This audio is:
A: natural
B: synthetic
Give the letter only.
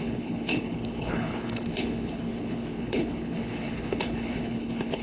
B